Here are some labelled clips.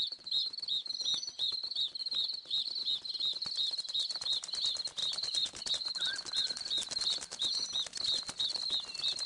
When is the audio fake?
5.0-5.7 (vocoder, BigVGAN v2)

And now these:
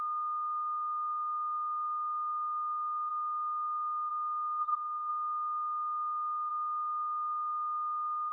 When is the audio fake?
4.6-5.1 (codec, SNAC)